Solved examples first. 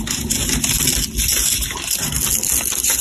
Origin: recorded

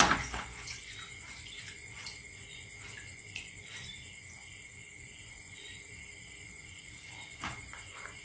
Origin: remade